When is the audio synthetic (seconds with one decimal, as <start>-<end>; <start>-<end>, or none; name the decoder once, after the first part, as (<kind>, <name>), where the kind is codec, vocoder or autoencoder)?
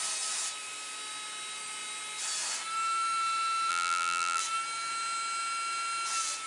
3.7-4.4 (vocoder, BigVGAN v2)